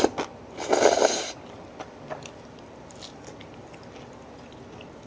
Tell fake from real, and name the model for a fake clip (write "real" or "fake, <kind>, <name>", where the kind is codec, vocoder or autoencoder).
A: real